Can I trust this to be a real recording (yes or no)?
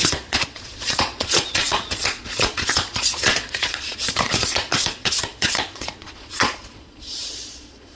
no